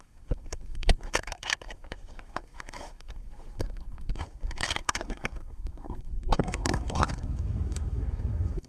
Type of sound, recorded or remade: remade